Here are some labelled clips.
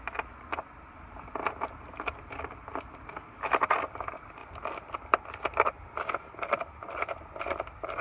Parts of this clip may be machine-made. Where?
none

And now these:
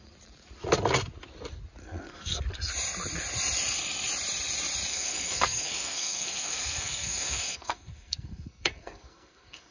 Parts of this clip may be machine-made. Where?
1.8-2.4 (codec, SNAC); 4.9-9.7

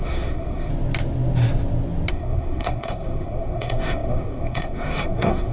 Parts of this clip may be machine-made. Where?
0.0-0.7 (codec, SNAC); 2.1-5.5

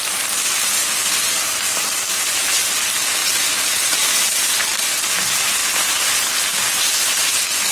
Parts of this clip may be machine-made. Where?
none

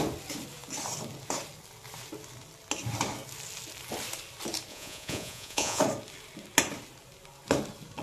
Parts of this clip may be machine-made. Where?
4.7-5.8 (vocoder, Vocos)

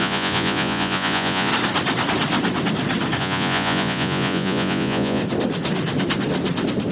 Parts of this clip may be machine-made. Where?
0.0-1.5 (vocoder, Vocos); 3.2-5.2